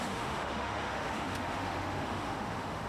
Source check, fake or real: fake